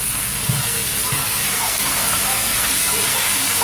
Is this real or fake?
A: fake